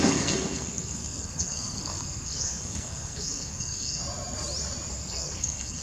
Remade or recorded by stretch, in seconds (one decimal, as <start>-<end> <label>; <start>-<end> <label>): 0.0-4.0 remade; 4.0-4.9 recorded; 4.9-5.8 remade